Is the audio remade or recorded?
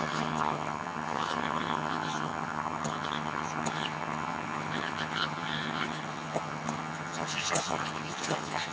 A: remade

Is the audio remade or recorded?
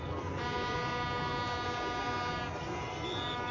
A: recorded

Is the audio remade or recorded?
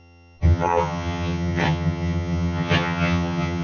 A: remade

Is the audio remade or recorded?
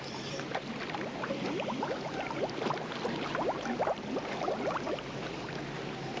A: recorded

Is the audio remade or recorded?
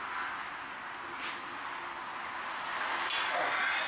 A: recorded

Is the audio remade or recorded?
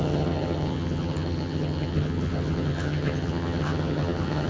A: remade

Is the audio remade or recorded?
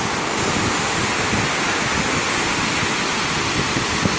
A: recorded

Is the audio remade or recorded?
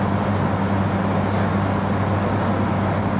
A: recorded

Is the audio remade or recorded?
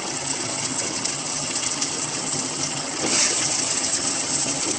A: remade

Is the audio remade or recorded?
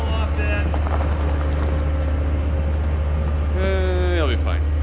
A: recorded